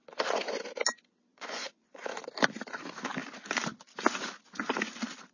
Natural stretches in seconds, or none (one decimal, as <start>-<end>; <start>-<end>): 0.0-1.3; 2.0-5.3